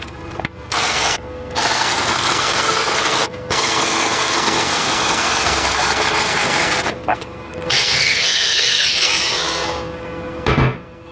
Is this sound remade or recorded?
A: remade